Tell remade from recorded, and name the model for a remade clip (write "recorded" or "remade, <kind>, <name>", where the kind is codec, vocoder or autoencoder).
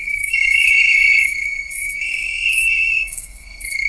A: remade, codec, SNAC